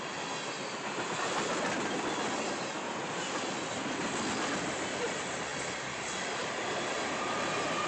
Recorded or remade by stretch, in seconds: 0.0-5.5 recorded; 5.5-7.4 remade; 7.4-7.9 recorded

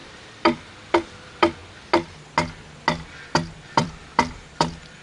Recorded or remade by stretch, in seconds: 0.0-1.6 remade; 1.6-3.1 recorded; 3.1-5.0 remade